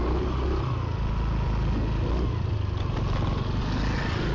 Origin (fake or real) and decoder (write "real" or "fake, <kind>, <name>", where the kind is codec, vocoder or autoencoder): real